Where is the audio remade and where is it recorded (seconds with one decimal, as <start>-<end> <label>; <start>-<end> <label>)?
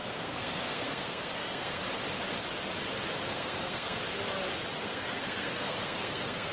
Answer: 0.0-1.8 remade; 1.8-3.2 recorded; 3.2-4.0 remade; 4.0-4.8 recorded; 4.8-6.5 remade